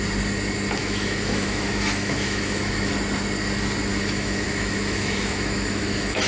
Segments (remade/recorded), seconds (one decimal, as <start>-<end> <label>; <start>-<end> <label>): 0.0-0.8 recorded; 0.8-2.9 remade; 2.9-3.9 recorded; 3.9-6.3 remade